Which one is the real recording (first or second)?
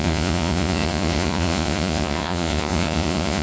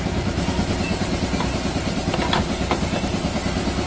second